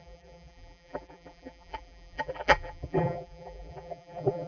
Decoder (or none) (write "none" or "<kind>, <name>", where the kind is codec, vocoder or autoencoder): vocoder, BigVGAN v2